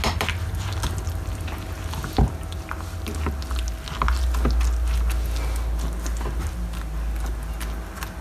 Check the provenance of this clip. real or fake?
real